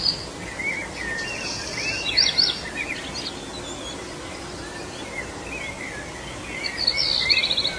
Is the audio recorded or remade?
recorded